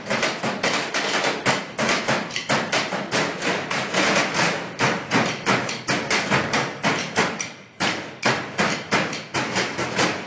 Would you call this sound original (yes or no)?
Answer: yes